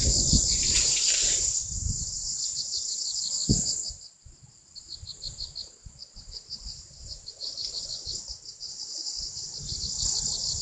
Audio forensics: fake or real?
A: real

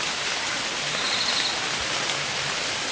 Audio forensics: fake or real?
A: real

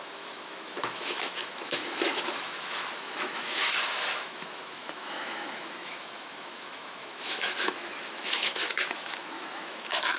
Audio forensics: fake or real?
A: fake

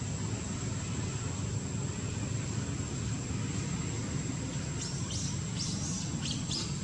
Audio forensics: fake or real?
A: real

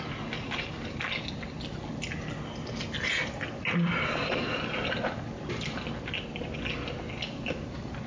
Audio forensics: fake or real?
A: real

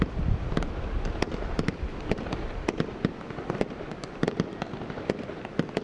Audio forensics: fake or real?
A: real